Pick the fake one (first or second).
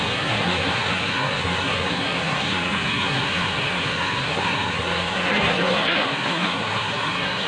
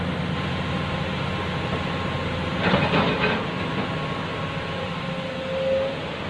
first